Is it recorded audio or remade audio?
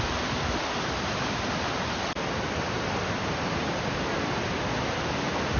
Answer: recorded